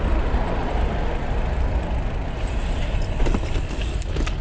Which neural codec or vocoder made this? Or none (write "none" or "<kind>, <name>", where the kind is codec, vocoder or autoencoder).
none